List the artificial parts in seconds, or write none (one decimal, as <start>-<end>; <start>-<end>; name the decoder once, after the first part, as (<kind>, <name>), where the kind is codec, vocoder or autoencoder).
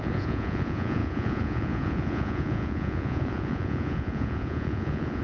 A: 0.0-5.2 (vocoder, Vocos)